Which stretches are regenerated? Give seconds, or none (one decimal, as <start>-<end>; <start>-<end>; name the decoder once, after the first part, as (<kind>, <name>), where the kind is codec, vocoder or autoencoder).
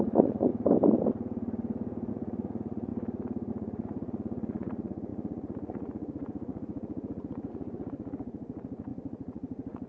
0.0-0.5 (vocoder, Vocos); 2.1-2.9; 3.5-9.9